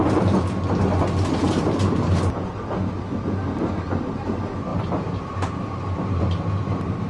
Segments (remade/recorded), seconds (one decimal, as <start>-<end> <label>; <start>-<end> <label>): 0.0-1.4 recorded; 1.4-4.1 remade; 4.1-4.7 recorded; 4.7-7.1 remade